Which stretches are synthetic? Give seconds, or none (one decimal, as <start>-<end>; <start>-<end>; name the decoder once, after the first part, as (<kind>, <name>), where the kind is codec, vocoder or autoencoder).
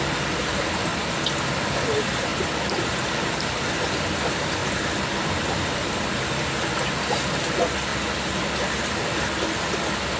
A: 0.0-0.9 (vocoder, BigVGAN v2); 1.4-10.2